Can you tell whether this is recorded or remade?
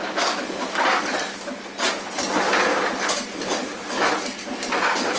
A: recorded